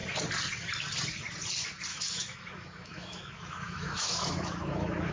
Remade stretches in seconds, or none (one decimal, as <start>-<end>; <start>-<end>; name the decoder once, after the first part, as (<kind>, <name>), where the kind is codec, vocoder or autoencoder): 1.9-5.1 (autoencoder, DAC-VAE)